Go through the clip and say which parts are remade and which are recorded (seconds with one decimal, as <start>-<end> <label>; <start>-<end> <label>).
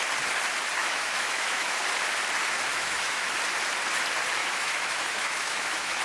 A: 0.0-0.8 recorded; 0.8-1.8 remade; 1.8-2.7 recorded; 2.7-3.3 remade; 3.3-4.4 recorded; 4.4-6.0 remade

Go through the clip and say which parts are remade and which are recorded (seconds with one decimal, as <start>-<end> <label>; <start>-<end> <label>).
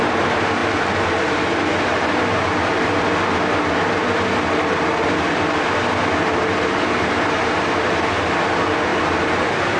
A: 0.0-8.9 recorded; 8.9-9.8 remade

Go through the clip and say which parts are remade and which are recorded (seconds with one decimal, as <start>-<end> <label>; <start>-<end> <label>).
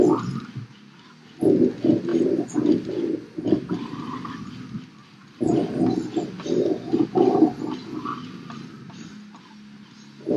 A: 0.0-2.1 recorded; 2.1-4.3 remade; 4.3-5.0 recorded; 5.0-5.8 remade; 5.8-10.4 recorded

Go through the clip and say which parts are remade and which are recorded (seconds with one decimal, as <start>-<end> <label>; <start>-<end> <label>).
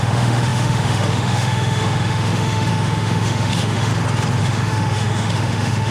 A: 0.0-3.9 remade; 3.9-4.4 recorded; 4.4-5.9 remade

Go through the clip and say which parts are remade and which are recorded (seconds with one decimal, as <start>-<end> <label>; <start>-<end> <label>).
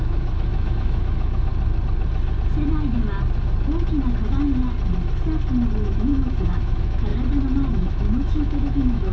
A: 0.0-1.5 remade; 1.5-5.8 recorded; 5.8-7.1 remade; 7.1-7.7 recorded; 7.7-9.1 remade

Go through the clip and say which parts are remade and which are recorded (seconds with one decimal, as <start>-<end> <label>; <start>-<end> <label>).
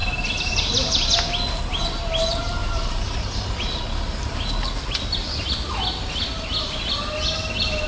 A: 0.0-7.9 recorded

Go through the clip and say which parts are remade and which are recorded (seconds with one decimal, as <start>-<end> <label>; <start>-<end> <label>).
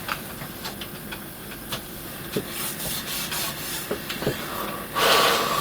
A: 0.0-5.6 recorded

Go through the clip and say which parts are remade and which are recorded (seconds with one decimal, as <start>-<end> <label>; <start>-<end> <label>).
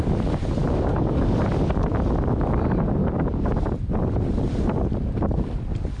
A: 0.0-0.6 recorded; 0.6-1.4 remade; 1.4-3.0 recorded; 3.0-3.5 remade; 3.5-6.0 recorded